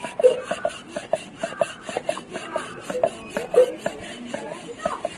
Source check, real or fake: real